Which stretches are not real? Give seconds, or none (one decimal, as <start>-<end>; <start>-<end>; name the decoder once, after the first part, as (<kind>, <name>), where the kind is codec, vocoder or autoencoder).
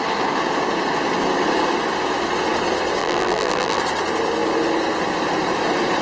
3.0-3.8 (vocoder, BigVGAN v2)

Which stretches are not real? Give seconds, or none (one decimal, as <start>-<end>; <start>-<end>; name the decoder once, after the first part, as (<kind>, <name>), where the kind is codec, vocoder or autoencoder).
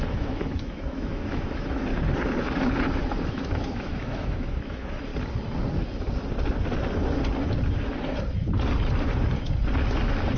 0.0-1.9 (autoencoder, DAC-VAE); 3.3-5.1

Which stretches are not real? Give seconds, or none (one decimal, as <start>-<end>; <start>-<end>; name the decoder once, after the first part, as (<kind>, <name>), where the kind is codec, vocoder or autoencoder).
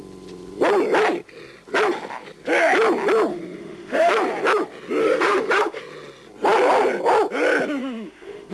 3.3-4.1 (autoencoder, DAC-VAE); 5.0-5.8; 7.8-8.5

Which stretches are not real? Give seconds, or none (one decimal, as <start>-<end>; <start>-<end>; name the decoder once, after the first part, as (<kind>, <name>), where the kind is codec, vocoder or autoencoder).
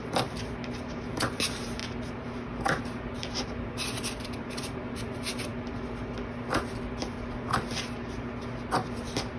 0.0-1.8 (vocoder, BigVGAN v2); 2.8-5.5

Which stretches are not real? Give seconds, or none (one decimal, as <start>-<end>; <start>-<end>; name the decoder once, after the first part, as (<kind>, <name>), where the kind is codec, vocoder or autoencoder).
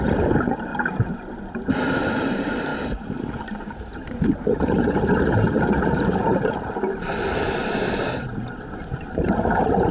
0.0-0.7 (vocoder, BigVGAN v2); 1.7-9.9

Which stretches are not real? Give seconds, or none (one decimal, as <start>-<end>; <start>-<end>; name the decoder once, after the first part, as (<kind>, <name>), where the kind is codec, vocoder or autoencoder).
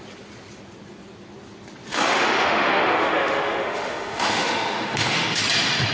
1.9-5.4 (autoencoder, DAC-VAE)